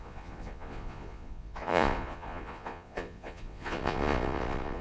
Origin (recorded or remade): remade